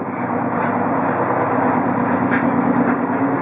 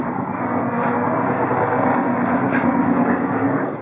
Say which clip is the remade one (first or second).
second